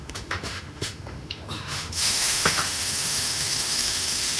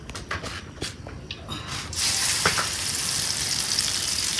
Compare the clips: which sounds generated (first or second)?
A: first